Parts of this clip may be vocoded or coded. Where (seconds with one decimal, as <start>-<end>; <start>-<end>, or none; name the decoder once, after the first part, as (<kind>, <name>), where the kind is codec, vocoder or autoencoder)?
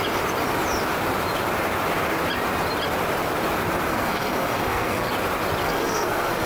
3.9-5.1 (codec, SNAC); 5.6-6.5